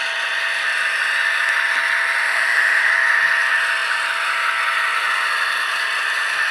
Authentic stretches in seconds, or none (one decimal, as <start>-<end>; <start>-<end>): 0.0-2.2; 2.9-6.5